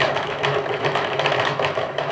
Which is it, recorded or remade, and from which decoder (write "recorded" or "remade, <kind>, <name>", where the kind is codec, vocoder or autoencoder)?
remade, autoencoder, DAC-VAE